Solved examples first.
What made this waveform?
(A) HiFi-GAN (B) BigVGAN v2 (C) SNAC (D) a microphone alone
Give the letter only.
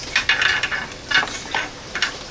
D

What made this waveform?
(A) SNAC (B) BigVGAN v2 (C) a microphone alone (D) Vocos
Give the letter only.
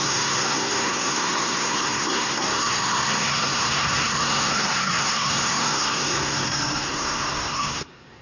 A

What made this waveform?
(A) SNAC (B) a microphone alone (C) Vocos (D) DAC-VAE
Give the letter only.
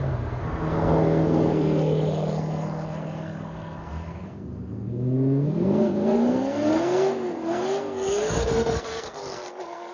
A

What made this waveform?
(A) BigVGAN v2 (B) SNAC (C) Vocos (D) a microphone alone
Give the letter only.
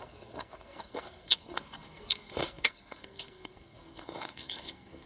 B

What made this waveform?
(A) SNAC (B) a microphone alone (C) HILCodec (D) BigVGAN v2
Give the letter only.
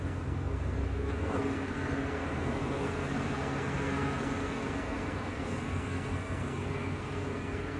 A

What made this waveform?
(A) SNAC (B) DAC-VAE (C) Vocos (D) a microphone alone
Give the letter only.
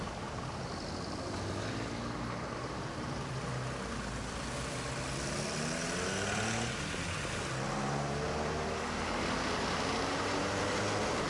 D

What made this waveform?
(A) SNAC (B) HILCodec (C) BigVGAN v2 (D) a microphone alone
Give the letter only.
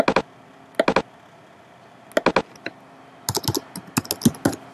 D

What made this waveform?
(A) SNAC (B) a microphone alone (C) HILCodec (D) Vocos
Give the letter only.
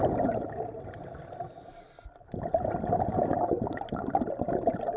B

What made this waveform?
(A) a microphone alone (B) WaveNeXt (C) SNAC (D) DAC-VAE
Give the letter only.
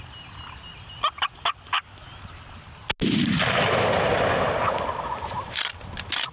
A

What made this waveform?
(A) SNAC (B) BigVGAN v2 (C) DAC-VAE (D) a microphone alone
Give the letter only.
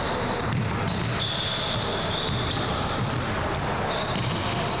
D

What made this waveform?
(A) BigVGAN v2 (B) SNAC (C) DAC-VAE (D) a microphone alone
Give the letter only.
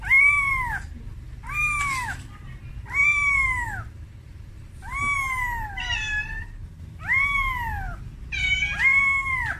D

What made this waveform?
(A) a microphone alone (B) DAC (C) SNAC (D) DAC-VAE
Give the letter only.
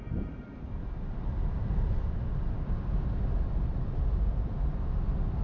A